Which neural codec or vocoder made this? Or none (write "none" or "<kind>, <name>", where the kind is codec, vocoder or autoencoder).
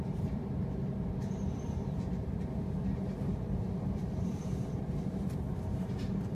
vocoder, BigVGAN v2